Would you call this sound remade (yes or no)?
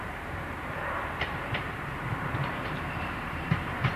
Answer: yes